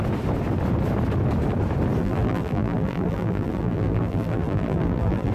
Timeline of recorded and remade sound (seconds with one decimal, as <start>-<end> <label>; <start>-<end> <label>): 0.0-2.0 recorded; 2.0-5.3 remade